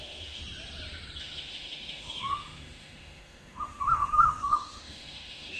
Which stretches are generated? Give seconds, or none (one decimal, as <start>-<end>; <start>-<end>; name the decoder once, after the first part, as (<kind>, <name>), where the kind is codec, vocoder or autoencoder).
0.0-0.4 (autoencoder, DAC-VAE); 1.2-5.6